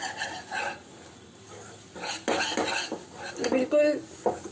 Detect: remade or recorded recorded